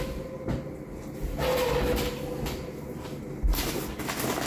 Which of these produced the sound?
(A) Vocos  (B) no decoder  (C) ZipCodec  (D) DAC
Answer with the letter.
B